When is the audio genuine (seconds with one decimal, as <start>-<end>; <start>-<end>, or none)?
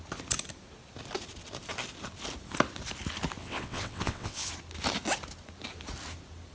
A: 0.0-3.4; 4.5-6.5